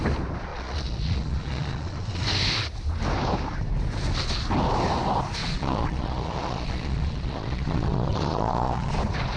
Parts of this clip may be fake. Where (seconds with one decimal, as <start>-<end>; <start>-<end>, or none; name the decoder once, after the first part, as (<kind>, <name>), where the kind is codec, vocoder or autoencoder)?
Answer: 0.5-2.2 (vocoder, Vocos); 5.4-8.9